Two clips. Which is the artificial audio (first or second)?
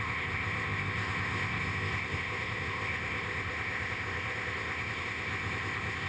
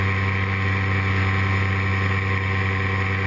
first